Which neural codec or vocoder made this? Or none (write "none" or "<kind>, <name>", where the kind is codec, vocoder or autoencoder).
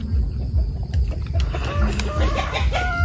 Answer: none